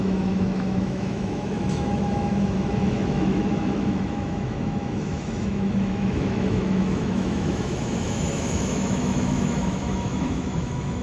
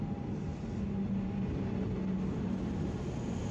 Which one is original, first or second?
second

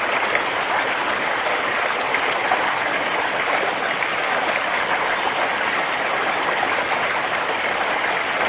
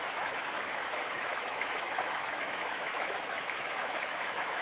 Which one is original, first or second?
first